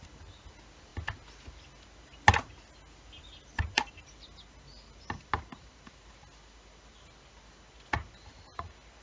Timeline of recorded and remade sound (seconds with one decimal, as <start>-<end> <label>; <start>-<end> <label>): 0.0-9.0 recorded